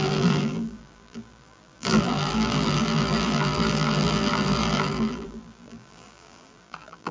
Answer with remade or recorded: remade